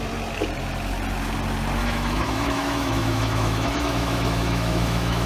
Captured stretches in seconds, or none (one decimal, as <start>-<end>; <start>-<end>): 0.0-1.8